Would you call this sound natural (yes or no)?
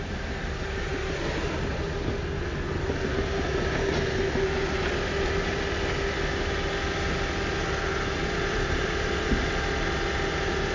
yes